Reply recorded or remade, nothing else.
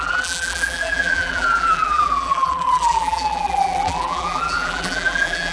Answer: remade